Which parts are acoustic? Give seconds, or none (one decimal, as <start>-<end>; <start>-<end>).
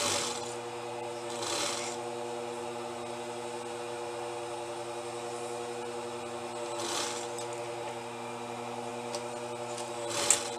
0.0-10.6